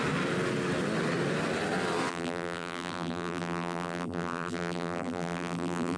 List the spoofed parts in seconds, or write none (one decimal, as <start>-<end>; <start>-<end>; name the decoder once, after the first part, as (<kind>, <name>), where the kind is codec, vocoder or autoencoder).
2.1-6.0 (vocoder, BigVGAN v2)